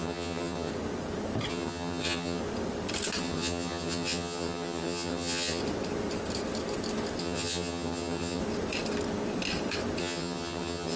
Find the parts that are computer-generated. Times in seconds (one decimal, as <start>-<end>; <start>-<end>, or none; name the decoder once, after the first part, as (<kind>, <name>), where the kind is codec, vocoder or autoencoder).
0.0-0.7 (vocoder, HiFi-GAN); 1.5-2.4; 3.2-5.6; 7.2-8.4; 10.0-11.0